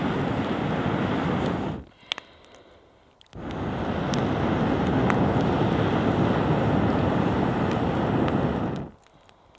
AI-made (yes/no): no